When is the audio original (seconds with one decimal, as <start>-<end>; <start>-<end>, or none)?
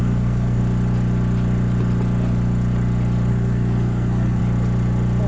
0.6-3.3; 4.4-5.3